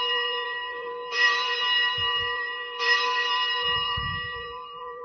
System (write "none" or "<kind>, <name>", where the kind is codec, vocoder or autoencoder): vocoder, BigVGAN v2